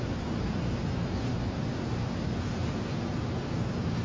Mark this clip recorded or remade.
remade